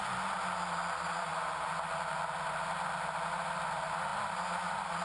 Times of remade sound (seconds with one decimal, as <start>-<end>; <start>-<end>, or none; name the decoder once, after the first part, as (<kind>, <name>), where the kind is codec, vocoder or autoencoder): none